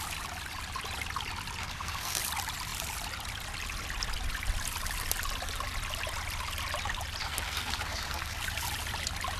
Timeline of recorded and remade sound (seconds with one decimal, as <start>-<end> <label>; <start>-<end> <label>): 0.0-1.6 recorded; 1.6-2.2 remade; 2.2-7.2 recorded; 7.2-8.4 remade; 8.4-9.4 recorded